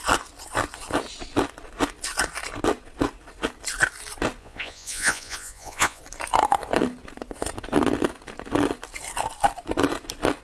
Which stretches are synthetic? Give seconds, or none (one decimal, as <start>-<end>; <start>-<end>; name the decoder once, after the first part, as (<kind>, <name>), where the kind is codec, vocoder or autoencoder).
4.4-6.0 (vocoder, Vocos)